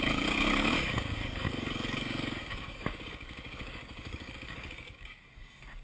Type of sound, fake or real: fake